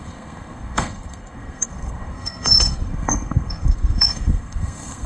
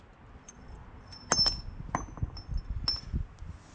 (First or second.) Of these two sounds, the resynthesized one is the first